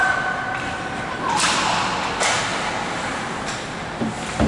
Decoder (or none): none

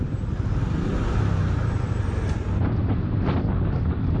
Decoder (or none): none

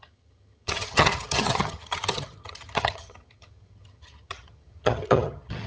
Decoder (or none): vocoder, HiFi-GAN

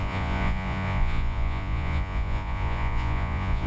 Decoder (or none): vocoder, Vocos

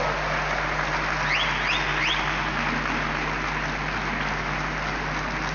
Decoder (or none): none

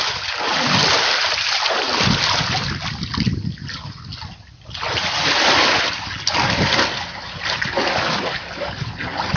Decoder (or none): none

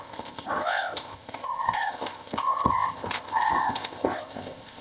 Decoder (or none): codec, ZipCodec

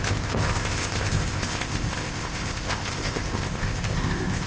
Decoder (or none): codec, ZipCodec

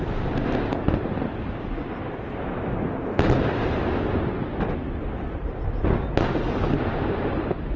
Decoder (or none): none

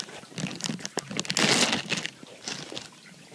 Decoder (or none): none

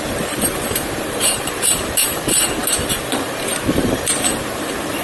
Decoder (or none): vocoder, BigVGAN v2